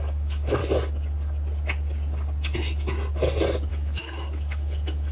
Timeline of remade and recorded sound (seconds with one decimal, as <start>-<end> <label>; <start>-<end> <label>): 0.0-0.6 remade; 0.6-3.7 recorded; 3.7-5.1 remade